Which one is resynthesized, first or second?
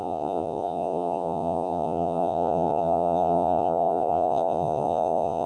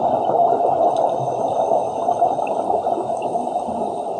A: first